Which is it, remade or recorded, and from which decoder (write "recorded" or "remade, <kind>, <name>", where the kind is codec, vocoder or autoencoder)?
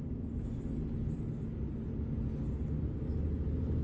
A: recorded